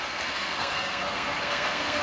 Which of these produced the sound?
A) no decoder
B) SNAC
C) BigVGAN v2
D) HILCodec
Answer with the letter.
B